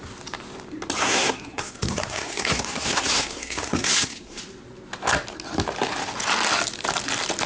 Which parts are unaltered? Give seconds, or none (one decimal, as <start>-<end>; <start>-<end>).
0.0-1.0; 4.4-7.5